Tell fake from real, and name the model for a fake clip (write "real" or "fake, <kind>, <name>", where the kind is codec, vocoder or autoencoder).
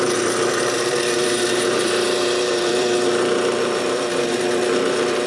fake, vocoder, BigVGAN v2